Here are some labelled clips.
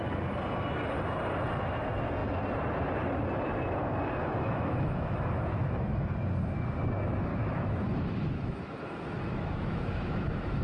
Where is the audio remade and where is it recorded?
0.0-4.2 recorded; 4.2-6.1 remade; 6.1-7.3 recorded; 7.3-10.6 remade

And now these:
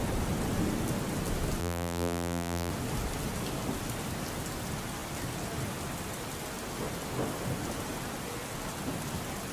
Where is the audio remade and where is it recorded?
0.0-1.6 recorded; 1.6-2.7 remade; 2.7-9.5 recorded

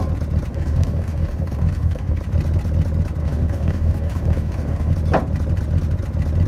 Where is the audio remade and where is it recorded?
0.0-0.5 recorded; 0.5-2.2 remade; 2.2-3.2 recorded; 3.2-4.9 remade; 4.9-6.5 recorded

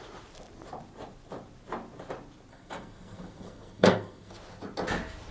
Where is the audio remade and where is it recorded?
0.0-2.5 recorded; 2.5-4.3 remade; 4.3-5.3 recorded

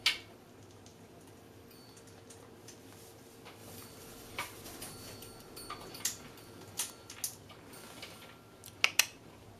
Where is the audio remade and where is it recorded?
0.0-0.9 recorded; 0.9-2.0 remade; 2.0-3.6 recorded; 3.6-6.8 remade; 6.8-9.6 recorded

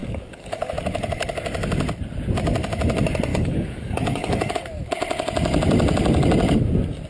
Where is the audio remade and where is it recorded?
0.0-0.7 remade; 0.7-3.3 recorded; 3.3-4.5 remade; 4.5-7.1 recorded

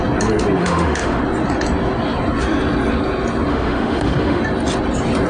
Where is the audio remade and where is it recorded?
0.0-0.6 recorded; 0.6-1.2 remade; 1.2-3.5 recorded; 3.5-4.4 remade; 4.4-5.3 recorded